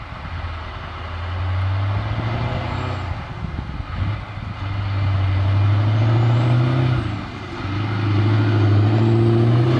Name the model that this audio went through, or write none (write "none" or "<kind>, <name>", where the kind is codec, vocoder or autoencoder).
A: none